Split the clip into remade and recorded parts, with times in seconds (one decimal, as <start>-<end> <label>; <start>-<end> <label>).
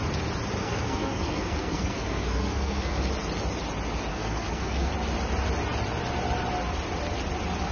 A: 0.0-0.6 recorded; 0.6-3.1 remade; 3.1-4.1 recorded; 4.1-4.9 remade; 4.9-7.7 recorded